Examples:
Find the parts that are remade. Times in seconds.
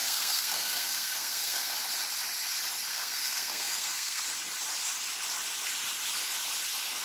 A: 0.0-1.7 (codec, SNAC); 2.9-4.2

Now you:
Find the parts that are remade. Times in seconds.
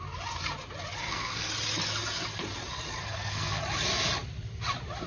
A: 1.0-1.5 (codec, SNAC); 3.0-3.6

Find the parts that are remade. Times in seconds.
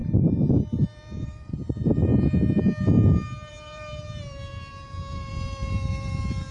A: 0.8-2.1 (vocoder, BigVGAN v2); 3.5-6.5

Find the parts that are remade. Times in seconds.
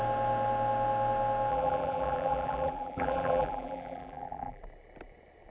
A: 1.5-4.6 (vocoder, BigVGAN v2)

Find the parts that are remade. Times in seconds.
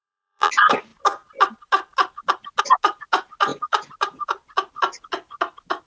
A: 0.0-0.5 (vocoder, BigVGAN v2)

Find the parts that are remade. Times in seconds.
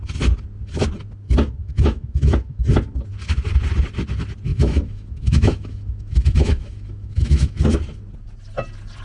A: 1.6-2.6 (autoencoder, DAC-VAE); 4.5-7.6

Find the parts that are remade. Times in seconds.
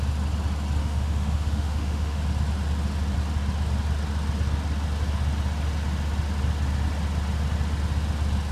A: 0.8-2.2 (autoencoder, DAC-VAE)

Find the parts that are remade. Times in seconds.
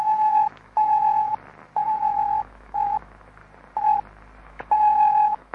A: 0.0-1.3 (autoencoder, DAC-VAE); 2.4-3.4; 4.4-5.5